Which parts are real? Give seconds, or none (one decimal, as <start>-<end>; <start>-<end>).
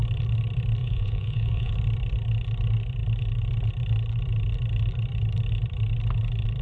0.0-0.8; 1.7-6.6